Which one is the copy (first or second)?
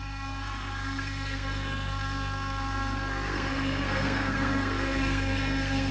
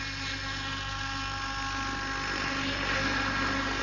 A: first